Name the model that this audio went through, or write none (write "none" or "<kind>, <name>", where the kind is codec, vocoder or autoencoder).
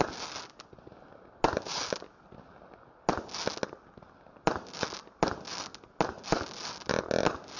none